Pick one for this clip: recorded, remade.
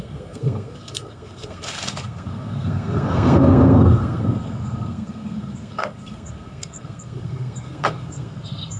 remade